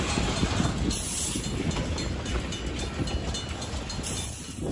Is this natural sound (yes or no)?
yes